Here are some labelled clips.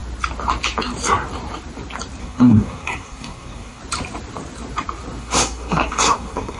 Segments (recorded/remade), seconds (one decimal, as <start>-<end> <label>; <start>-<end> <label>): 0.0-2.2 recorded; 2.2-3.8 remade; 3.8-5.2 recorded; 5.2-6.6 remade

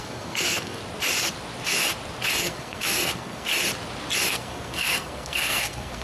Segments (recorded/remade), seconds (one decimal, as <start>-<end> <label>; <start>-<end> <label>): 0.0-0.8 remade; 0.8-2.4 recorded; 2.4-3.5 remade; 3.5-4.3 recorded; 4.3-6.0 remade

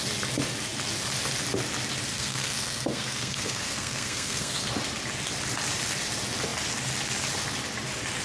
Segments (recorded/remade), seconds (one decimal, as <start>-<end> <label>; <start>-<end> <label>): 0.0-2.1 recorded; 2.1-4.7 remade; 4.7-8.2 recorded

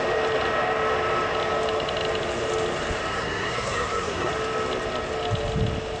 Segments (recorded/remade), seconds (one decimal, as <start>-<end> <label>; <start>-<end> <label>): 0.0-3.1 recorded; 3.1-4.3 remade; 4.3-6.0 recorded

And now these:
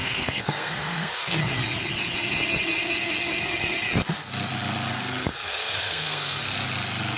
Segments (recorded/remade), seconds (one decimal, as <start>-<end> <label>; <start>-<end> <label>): 0.0-1.4 remade; 1.4-5.3 recorded; 5.3-6.4 remade; 6.4-7.2 recorded

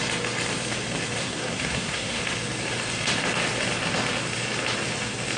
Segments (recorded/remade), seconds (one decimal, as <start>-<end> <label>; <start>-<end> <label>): 0.0-1.2 recorded; 1.2-2.2 remade; 2.2-5.4 recorded